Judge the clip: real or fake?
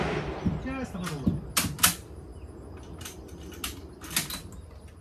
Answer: real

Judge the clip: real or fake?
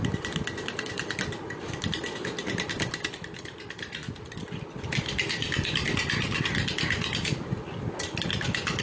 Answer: real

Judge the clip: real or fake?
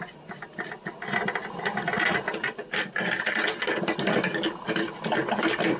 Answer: real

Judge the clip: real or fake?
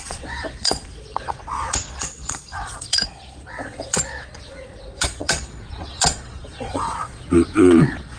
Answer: fake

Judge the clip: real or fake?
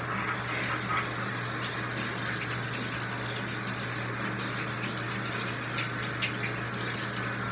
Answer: real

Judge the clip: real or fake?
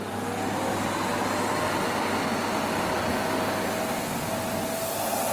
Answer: real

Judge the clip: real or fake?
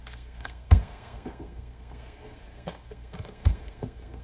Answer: fake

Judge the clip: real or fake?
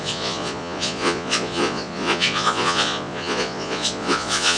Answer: fake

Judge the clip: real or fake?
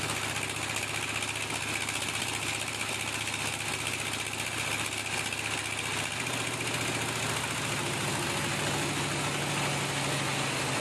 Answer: real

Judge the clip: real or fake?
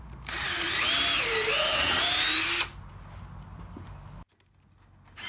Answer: real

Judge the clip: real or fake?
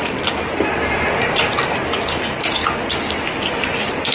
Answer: real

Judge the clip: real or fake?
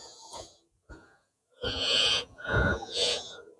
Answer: fake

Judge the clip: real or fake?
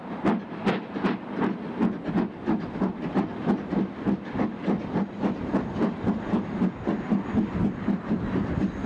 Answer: real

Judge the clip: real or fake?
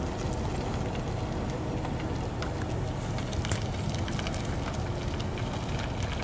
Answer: real